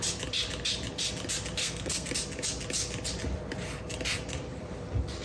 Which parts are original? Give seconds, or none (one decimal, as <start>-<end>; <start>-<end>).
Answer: 0.0-1.6; 2.1-5.2